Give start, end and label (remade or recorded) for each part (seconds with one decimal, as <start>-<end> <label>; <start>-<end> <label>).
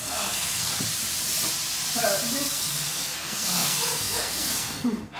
0.0-0.7 remade; 0.7-2.3 recorded; 2.3-5.2 remade